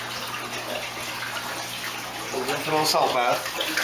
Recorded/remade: recorded